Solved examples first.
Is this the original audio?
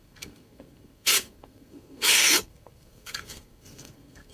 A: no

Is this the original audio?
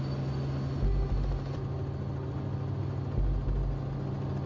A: yes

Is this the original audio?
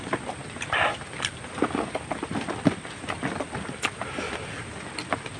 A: yes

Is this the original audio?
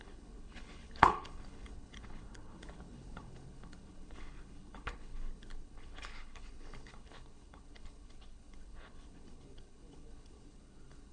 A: no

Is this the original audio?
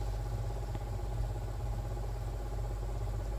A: yes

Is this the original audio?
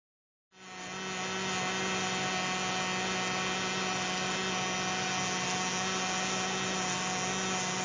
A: yes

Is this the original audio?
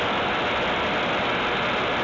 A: yes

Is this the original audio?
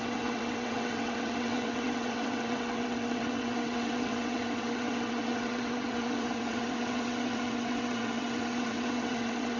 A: no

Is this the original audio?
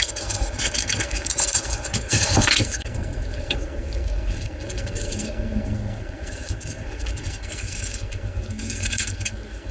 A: no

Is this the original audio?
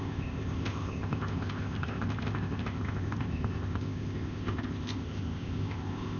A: no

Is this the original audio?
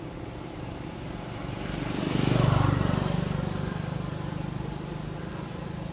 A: no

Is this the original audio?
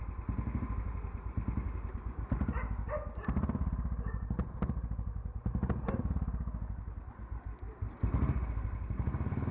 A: yes